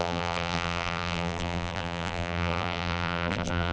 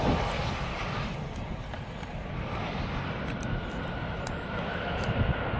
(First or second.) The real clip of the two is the second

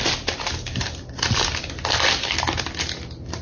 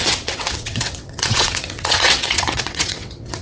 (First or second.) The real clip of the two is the first